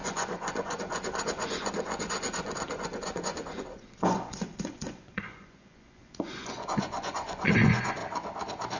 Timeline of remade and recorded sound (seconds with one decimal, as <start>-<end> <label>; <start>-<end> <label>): 0.0-8.0 remade; 8.0-8.8 recorded